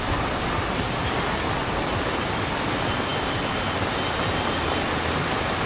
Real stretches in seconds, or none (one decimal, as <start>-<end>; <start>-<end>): 0.0-5.7